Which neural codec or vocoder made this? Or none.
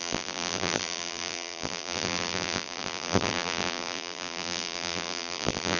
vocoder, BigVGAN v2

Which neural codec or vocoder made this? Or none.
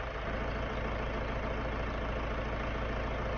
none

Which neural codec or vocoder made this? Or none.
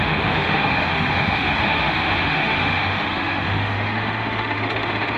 autoencoder, DAC-VAE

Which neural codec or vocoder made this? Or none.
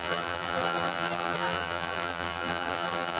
vocoder, BigVGAN v2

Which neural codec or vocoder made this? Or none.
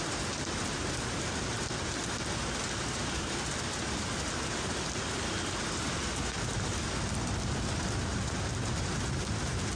none